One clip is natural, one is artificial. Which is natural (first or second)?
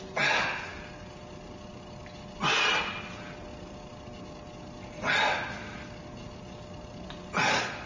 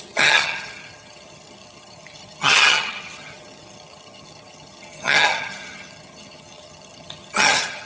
first